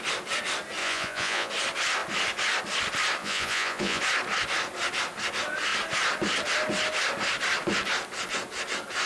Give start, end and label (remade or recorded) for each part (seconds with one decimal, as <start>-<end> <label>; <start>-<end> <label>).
0.0-0.8 recorded; 0.8-1.5 remade; 1.5-3.2 recorded; 3.2-4.0 remade; 4.0-9.1 recorded